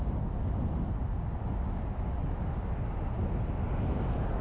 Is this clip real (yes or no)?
yes